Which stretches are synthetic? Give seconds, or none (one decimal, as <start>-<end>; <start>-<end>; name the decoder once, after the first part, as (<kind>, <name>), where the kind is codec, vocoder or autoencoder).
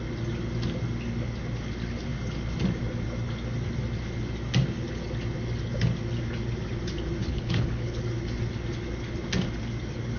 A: 7.2-8.0 (codec, HILCodec)